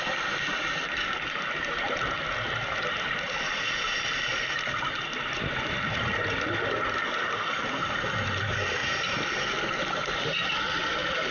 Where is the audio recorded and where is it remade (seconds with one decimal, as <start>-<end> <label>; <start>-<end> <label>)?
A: 0.0-11.3 recorded